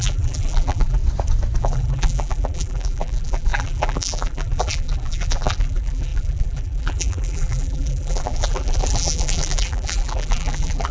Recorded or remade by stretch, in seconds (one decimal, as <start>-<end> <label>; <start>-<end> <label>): 0.0-1.0 remade; 1.0-1.6 recorded; 1.6-10.9 remade